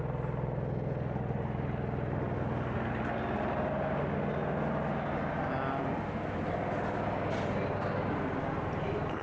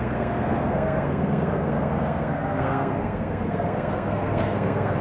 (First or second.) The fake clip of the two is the second